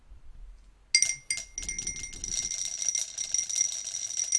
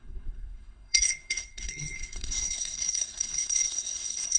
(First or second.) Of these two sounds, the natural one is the first